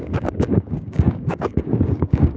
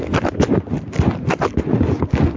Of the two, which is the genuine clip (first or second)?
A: second